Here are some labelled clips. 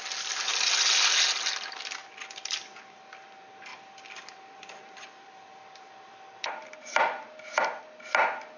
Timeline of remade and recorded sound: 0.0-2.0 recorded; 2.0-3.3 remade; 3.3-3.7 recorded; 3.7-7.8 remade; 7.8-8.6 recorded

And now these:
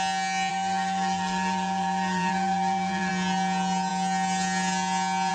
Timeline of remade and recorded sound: 0.0-0.5 recorded; 0.5-3.1 remade; 3.1-5.3 recorded

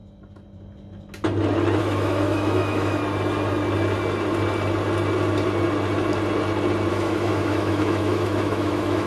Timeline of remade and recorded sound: 0.0-1.8 recorded; 1.8-3.0 remade; 3.0-6.9 recorded; 6.9-9.1 remade

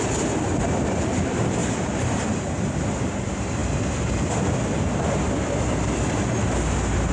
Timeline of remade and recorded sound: 0.0-1.6 recorded; 1.6-2.6 remade; 2.6-7.1 recorded

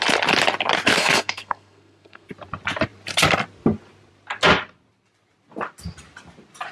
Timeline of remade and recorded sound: 0.0-0.9 recorded; 0.9-2.3 remade; 2.3-6.7 recorded

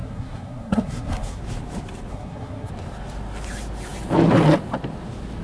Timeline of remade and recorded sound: 0.0-1.4 remade; 1.4-2.1 recorded; 2.1-2.7 remade; 2.7-5.4 recorded

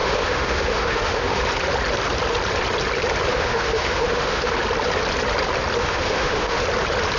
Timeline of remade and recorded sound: 0.0-1.4 remade; 1.4-3.3 recorded; 3.3-4.5 remade; 4.5-5.8 recorded; 5.8-6.6 remade; 6.6-7.2 recorded

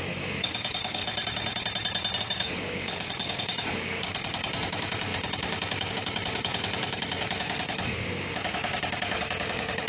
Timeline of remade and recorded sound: 0.0-1.0 remade; 1.0-2.2 recorded; 2.2-9.9 remade